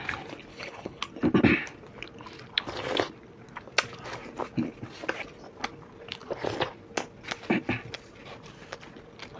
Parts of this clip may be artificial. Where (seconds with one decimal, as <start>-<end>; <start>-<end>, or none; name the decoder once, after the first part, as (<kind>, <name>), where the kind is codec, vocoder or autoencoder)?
0.5-1.0 (codec, HILCodec)